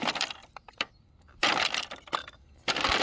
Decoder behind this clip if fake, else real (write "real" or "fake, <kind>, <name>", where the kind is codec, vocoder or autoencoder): fake, vocoder, BigVGAN v2